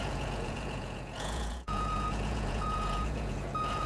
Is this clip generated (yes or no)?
yes